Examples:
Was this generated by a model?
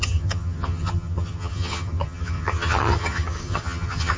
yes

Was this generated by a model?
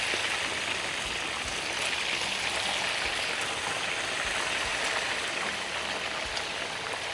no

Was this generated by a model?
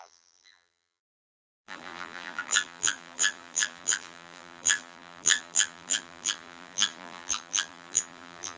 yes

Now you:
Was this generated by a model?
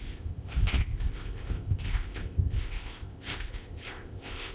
yes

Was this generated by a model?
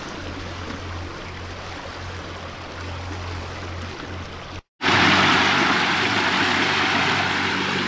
no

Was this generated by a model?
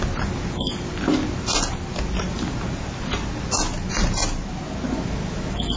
no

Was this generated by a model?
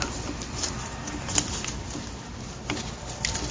no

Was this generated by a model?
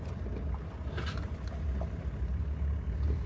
no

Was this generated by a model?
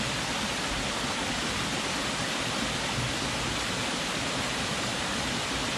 no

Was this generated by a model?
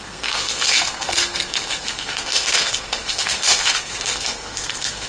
yes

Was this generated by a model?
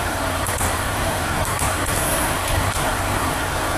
yes